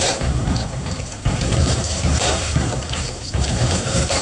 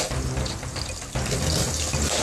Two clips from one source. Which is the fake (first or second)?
first